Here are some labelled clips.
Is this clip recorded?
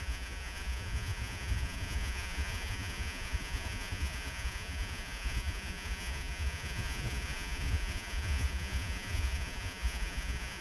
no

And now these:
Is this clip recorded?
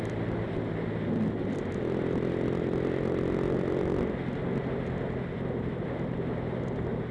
yes